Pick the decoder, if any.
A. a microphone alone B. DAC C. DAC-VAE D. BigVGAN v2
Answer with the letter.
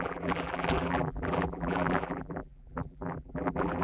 D